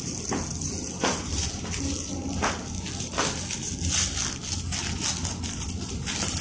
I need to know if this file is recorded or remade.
recorded